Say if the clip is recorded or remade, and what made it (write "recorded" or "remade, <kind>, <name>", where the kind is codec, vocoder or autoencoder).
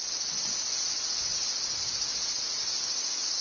recorded